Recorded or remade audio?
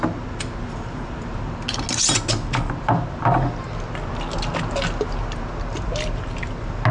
recorded